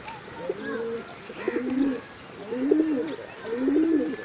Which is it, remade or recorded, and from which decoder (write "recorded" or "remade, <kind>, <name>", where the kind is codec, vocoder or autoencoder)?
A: recorded